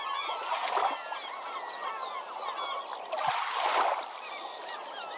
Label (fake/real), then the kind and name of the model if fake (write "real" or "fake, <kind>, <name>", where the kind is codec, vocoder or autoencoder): real